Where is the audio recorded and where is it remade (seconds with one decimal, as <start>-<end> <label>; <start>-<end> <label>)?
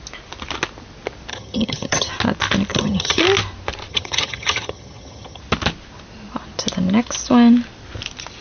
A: 0.0-1.3 recorded; 1.3-2.1 remade; 2.1-2.7 recorded; 2.7-3.2 remade; 3.2-3.9 recorded; 3.9-5.4 remade; 5.4-8.4 recorded